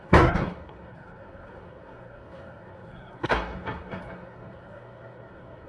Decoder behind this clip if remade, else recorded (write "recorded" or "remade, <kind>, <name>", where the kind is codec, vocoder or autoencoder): remade, codec, SNAC